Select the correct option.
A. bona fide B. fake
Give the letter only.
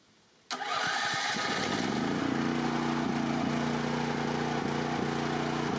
A